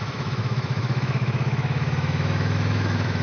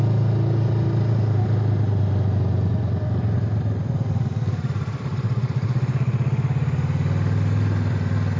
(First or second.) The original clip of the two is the second